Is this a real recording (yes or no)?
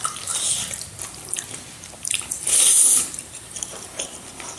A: no